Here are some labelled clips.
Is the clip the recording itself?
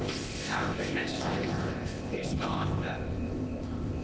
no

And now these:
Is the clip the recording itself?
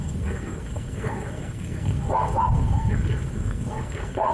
no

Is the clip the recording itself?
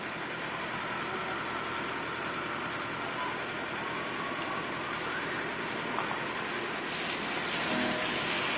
yes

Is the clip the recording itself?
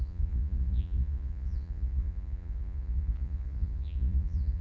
no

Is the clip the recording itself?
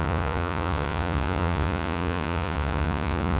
no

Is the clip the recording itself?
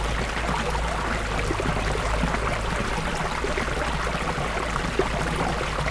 yes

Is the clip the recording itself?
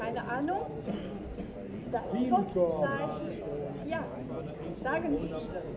yes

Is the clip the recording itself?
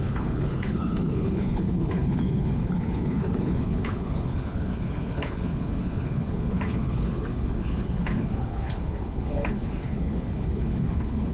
no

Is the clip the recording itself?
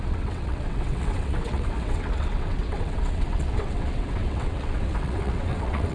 no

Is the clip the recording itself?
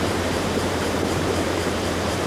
no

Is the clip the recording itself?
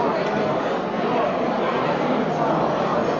yes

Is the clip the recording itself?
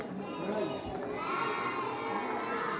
yes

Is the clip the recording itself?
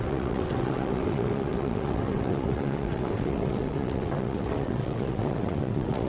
no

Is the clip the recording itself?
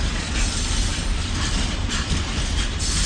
no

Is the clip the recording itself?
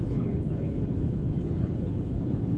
no